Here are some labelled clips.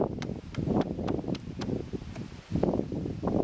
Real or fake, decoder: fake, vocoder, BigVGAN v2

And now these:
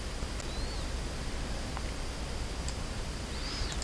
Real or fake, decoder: real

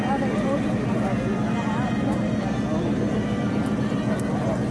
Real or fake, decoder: real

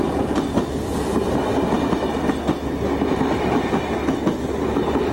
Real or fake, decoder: real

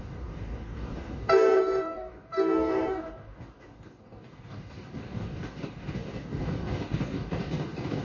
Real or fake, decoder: fake, codec, DAC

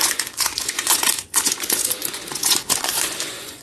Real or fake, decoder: fake, vocoder, Vocos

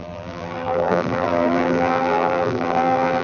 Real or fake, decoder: fake, vocoder, BigVGAN v2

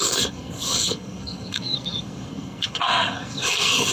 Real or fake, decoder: fake, codec, SNAC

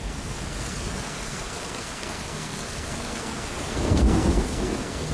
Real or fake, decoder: fake, codec, SNAC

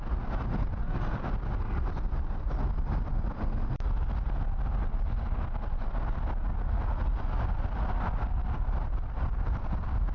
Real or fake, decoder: real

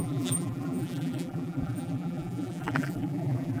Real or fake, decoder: fake, vocoder, BigVGAN v2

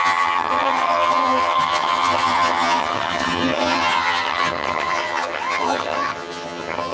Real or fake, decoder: fake, vocoder, HiFi-GAN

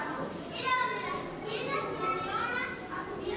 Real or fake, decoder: real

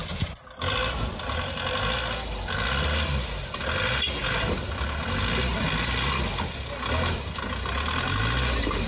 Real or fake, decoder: real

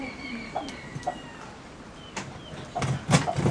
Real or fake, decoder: real